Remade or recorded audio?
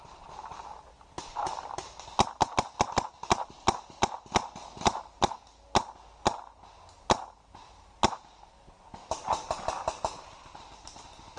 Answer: recorded